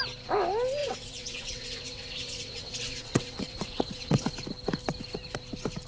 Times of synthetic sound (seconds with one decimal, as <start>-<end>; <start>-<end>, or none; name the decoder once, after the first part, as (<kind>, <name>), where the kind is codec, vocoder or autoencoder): 0.8-4.3 (vocoder, WaveNeXt)